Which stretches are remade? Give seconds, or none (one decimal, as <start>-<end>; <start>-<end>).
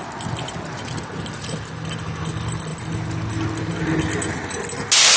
none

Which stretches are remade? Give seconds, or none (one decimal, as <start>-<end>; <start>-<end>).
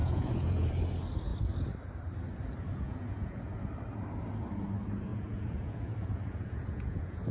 0.0-0.7; 2.6-3.5; 5.1-7.3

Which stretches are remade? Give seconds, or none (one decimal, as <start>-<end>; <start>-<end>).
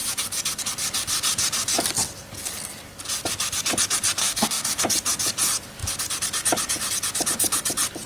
4.2-4.8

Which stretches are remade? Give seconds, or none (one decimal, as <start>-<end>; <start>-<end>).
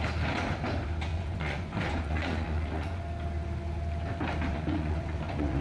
1.1-3.0; 4.5-5.6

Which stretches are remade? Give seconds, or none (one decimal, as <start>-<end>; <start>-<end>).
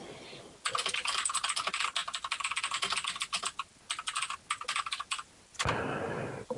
none